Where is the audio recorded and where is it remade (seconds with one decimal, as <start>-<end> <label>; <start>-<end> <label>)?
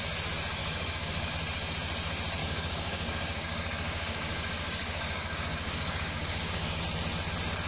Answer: 0.0-0.6 recorded; 0.6-1.3 remade; 1.3-2.4 recorded; 2.4-6.8 remade; 6.8-7.7 recorded